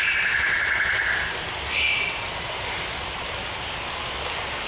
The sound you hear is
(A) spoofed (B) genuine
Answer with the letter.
B